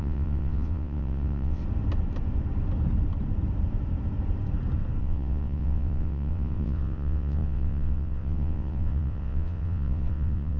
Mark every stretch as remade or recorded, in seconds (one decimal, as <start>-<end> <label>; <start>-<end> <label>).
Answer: 0.0-1.6 remade; 1.6-5.0 recorded; 5.0-10.6 remade